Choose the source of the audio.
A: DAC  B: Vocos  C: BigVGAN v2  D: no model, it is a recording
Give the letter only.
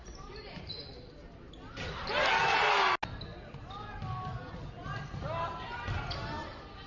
D